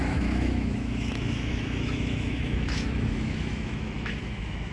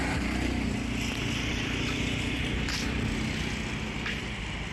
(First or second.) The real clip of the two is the second